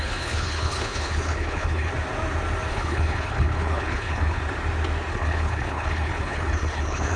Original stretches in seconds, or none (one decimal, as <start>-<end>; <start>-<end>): 1.9-2.7; 4.4-5.1